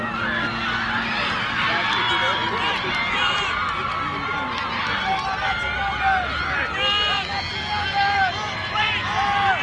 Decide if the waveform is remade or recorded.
recorded